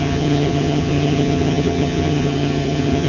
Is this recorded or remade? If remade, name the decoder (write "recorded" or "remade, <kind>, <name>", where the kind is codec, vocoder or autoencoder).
remade, vocoder, HiFi-GAN